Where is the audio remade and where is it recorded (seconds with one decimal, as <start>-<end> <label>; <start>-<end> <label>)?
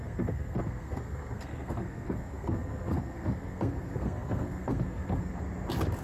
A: 0.0-5.3 remade; 5.3-6.0 recorded